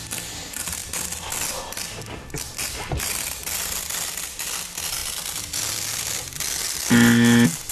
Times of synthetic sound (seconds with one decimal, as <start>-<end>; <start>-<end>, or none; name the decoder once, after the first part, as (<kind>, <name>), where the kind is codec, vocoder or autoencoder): none